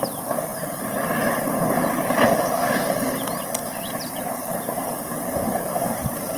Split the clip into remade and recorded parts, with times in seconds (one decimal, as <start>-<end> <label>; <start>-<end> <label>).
0.0-3.6 recorded; 3.6-6.4 remade